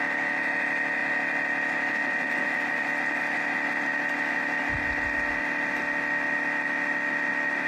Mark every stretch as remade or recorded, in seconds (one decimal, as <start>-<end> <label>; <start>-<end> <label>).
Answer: 0.0-7.7 recorded